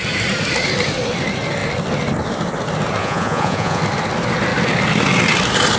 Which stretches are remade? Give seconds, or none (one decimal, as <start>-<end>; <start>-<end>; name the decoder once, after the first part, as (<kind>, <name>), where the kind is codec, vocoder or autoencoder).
3.0-3.8 (vocoder, Vocos)